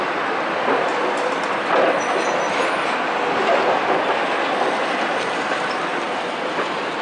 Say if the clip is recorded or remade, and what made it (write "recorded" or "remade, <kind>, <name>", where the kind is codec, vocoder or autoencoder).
recorded